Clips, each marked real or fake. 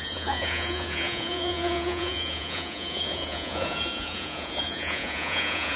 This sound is fake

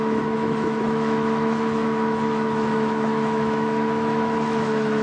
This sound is fake